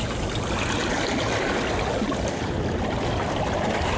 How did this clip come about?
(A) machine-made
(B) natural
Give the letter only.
B